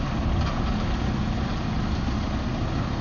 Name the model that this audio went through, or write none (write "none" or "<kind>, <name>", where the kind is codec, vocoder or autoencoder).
none